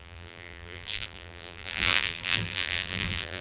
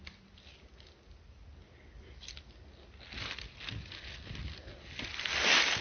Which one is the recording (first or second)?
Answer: second